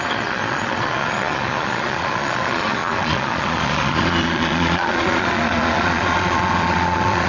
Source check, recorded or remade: remade